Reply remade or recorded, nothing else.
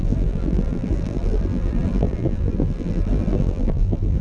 remade